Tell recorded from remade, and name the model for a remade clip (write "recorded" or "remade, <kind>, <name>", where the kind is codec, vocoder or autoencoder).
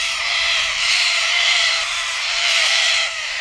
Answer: remade, vocoder, BigVGAN v2